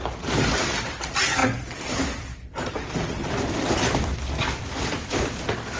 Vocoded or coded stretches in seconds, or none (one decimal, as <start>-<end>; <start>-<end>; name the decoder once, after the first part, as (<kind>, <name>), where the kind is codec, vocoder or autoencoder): 0.5-5.8 (vocoder, BigVGAN v2)